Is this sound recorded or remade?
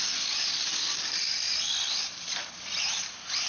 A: remade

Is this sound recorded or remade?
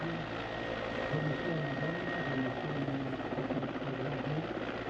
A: recorded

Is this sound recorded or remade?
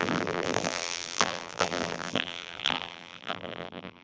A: remade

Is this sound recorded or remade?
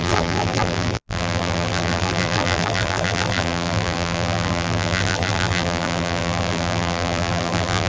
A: remade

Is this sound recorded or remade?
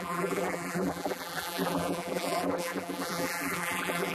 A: remade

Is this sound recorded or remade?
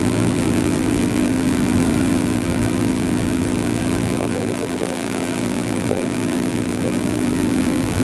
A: remade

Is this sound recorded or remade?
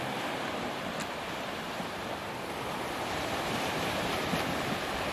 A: remade